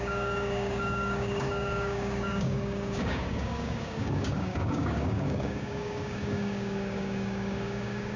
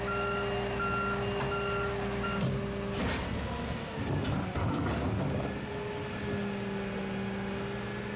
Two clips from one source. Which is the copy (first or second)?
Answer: first